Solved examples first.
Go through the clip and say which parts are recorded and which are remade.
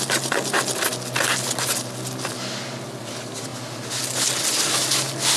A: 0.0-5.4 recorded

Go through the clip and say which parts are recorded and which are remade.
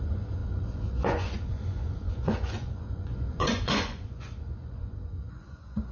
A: 0.0-5.9 remade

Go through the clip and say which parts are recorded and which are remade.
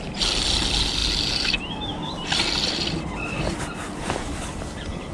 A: 0.0-5.1 recorded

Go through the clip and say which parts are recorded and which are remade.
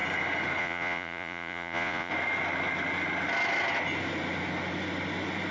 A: 0.0-0.6 recorded; 0.6-2.1 remade; 2.1-5.5 recorded